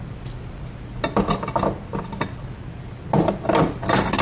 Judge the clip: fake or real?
real